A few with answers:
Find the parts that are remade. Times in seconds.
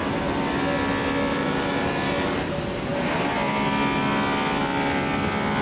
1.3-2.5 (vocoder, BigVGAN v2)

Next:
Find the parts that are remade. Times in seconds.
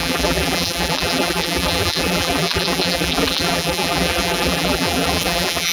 0.0-5.7 (vocoder, BigVGAN v2)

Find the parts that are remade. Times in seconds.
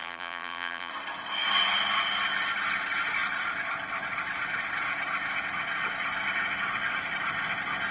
0.0-0.9 (vocoder, BigVGAN v2)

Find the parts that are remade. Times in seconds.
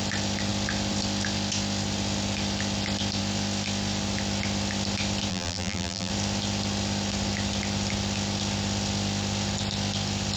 5.3-6.1 (vocoder, BigVGAN v2)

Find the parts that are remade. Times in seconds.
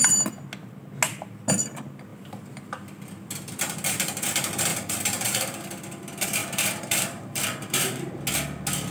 4.7-5.6 (vocoder, BigVGAN v2); 6.4-8.1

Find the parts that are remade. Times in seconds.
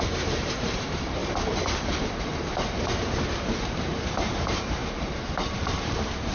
0.0-6.3 (vocoder, BigVGAN v2)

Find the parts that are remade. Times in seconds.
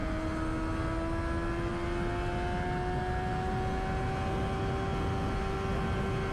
none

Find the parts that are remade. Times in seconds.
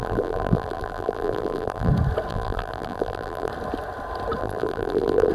0.0-1.9 (vocoder, BigVGAN v2); 2.3-3.5; 4.4-5.3